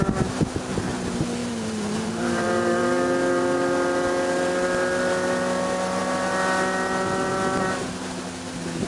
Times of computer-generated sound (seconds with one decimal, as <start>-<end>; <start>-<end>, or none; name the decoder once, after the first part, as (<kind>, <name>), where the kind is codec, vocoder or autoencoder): 1.4-2.8 (vocoder, BigVGAN v2)